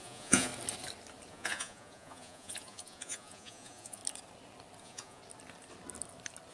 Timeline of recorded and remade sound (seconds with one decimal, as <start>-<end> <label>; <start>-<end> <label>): 0.0-0.5 remade; 0.5-1.3 recorded; 1.3-4.0 remade; 4.0-4.8 recorded; 4.8-5.2 remade; 5.2-6.5 recorded